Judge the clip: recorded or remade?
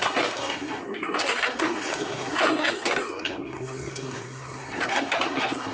remade